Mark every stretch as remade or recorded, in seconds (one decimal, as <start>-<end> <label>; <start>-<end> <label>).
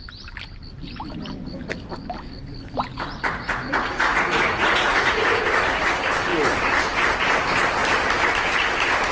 0.0-2.9 recorded; 2.9-5.3 remade; 5.3-9.1 recorded